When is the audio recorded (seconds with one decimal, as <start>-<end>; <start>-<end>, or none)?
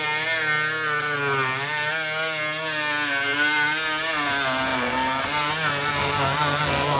0.0-4.7; 5.5-6.0